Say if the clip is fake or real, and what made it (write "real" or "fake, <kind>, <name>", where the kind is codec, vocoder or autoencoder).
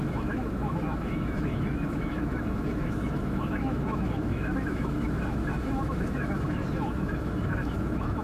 fake, autoencoder, DAC-VAE